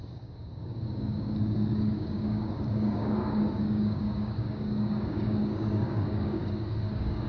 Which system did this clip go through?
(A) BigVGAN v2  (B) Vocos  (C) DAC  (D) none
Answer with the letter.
C